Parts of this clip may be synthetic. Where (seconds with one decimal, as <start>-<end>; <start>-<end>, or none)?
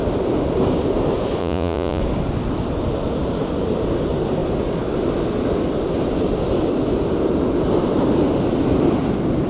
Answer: 1.4-2.0